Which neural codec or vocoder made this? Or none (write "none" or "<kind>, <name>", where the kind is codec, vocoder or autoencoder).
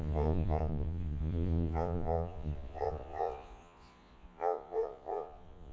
vocoder, Vocos